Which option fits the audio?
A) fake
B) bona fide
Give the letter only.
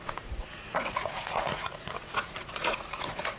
A